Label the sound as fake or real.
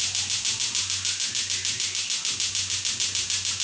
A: real